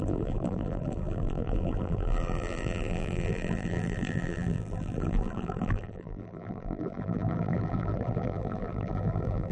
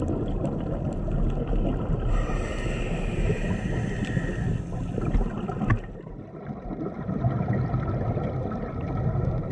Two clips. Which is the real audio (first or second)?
second